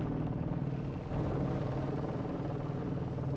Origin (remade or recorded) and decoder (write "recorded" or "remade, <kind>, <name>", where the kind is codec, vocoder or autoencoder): recorded